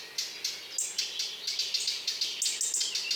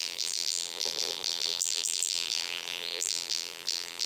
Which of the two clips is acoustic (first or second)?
first